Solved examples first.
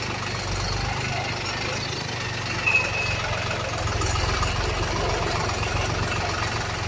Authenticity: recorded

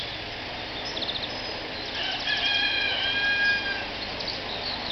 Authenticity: recorded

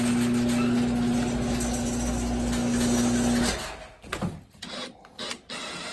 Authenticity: recorded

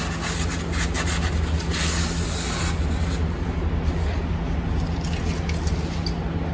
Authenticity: recorded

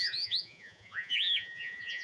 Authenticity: remade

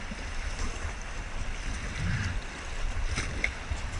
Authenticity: recorded